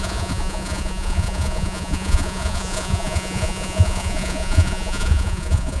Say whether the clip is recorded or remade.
remade